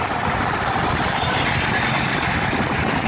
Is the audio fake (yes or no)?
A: no